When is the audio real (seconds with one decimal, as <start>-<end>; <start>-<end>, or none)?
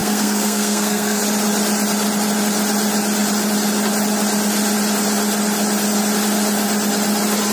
1.2-7.5